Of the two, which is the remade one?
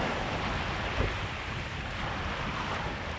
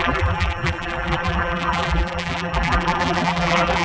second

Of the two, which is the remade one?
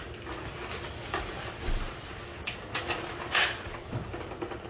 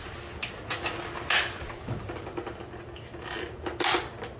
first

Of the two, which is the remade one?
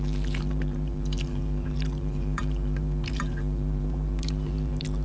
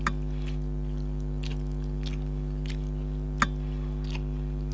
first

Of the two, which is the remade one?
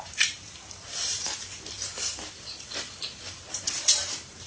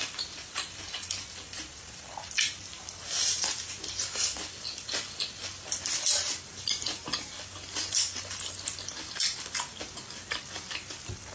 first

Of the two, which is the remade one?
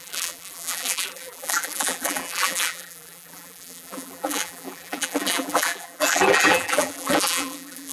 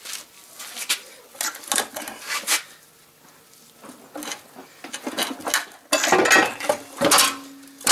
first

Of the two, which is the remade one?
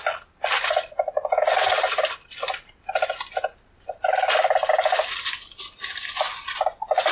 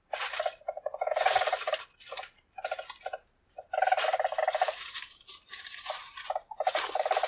second